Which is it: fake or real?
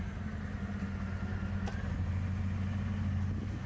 real